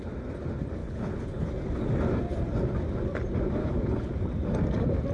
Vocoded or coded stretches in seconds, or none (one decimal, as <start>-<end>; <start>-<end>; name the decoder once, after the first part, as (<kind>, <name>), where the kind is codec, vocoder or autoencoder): 0.8-1.5 (codec, HILCodec); 3.6-4.1